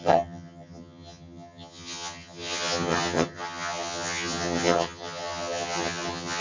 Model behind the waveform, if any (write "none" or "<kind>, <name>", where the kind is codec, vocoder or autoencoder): vocoder, HiFi-GAN